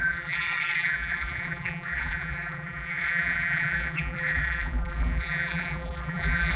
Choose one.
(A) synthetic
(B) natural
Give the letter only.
A